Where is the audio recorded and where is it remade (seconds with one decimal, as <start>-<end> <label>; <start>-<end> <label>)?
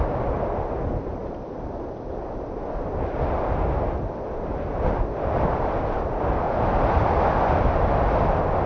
0.0-8.7 recorded